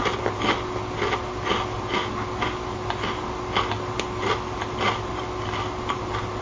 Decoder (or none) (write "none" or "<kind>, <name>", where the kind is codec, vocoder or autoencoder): none